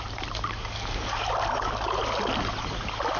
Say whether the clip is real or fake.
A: real